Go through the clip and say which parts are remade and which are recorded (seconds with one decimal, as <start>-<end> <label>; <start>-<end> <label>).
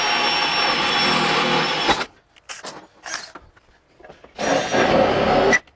0.0-5.8 recorded